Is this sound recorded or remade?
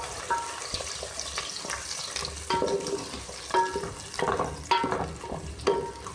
recorded